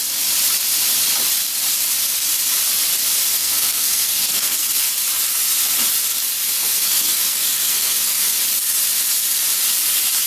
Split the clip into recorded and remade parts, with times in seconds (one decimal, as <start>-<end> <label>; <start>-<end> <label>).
0.0-3.4 recorded; 3.4-4.9 remade; 4.9-6.6 recorded; 6.6-8.4 remade; 8.4-10.3 recorded